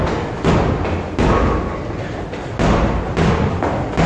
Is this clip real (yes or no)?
yes